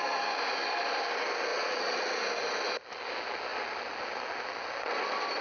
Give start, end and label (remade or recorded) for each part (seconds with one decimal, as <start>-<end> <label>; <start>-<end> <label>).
0.0-1.5 recorded; 1.5-2.2 remade; 2.2-5.4 recorded